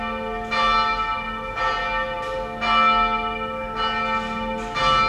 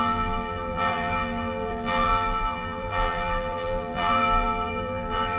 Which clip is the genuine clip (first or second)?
first